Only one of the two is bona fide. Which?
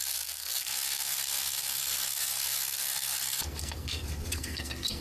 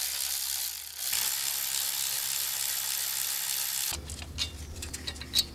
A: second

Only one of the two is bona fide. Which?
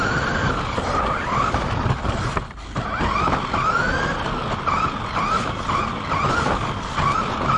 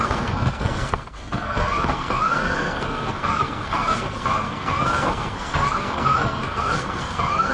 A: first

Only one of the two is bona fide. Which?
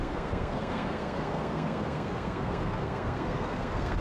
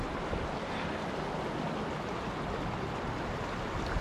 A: second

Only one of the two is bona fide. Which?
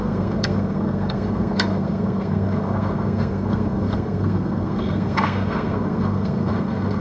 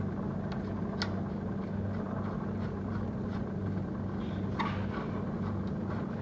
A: second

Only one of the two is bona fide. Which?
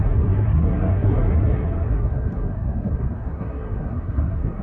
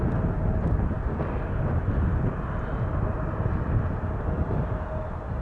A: second